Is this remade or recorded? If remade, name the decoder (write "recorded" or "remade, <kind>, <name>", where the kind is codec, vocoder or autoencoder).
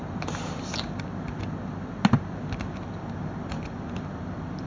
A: recorded